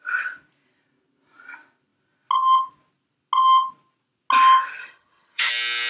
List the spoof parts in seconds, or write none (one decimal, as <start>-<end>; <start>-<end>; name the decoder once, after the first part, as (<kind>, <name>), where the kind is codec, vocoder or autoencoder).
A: 4.8-5.5 (vocoder, HiFi-GAN)